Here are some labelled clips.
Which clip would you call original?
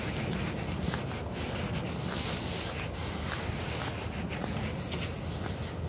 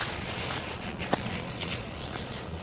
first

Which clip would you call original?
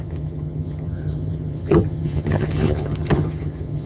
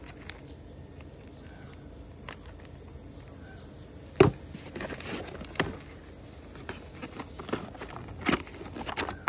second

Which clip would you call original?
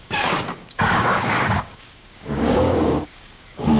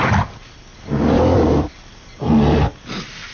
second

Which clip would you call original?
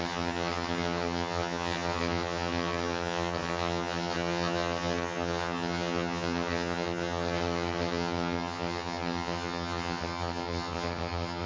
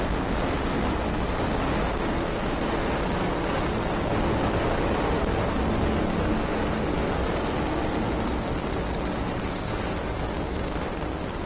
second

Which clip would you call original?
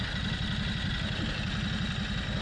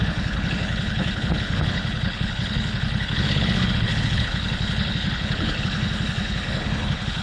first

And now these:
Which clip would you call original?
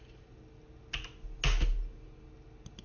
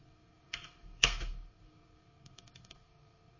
first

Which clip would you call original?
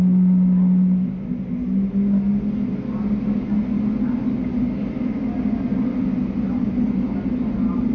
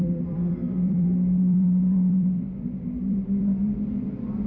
first